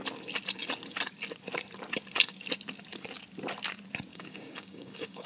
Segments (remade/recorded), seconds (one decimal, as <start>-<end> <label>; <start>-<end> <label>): 0.0-4.1 recorded; 4.1-5.3 remade